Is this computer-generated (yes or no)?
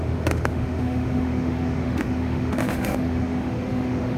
yes